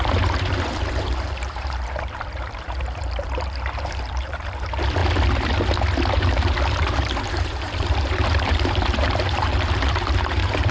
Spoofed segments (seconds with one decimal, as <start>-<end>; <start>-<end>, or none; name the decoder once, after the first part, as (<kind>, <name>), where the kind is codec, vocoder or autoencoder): 0.0-5.0 (vocoder, BigVGAN v2); 6.1-10.7